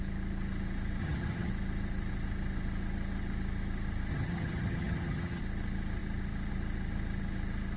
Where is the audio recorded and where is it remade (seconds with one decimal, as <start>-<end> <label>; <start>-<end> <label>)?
0.0-1.0 recorded; 1.0-1.5 remade; 1.5-4.1 recorded; 4.1-5.4 remade; 5.4-7.8 recorded